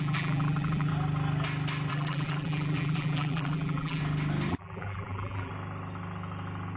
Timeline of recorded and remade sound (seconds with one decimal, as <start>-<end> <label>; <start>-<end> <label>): 0.0-0.9 remade; 0.9-1.9 recorded; 1.9-4.0 remade; 4.0-4.5 recorded; 4.5-5.5 remade; 5.5-6.8 recorded